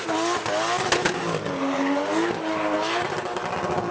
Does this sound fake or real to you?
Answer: real